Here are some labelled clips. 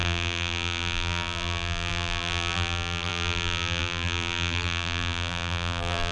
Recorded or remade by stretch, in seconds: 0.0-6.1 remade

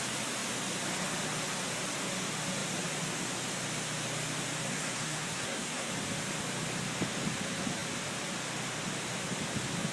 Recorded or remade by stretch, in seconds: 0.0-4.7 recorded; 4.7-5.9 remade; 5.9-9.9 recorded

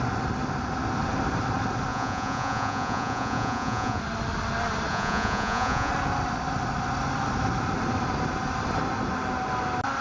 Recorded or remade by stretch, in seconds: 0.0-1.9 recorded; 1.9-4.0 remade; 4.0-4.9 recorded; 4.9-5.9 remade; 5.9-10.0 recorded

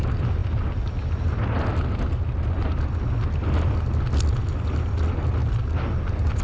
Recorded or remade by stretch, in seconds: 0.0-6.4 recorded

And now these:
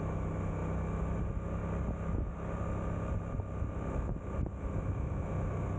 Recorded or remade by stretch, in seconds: 0.0-5.8 recorded